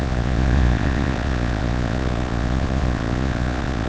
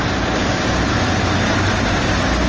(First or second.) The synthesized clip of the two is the first